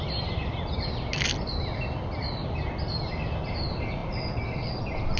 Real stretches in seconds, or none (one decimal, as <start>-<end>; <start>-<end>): 0.0-5.2